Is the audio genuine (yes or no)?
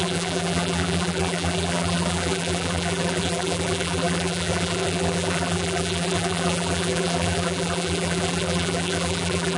no